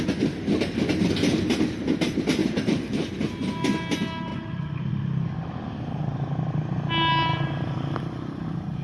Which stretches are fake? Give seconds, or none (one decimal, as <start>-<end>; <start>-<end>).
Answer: 2.4-3.1; 4.3-4.9; 7.3-8.0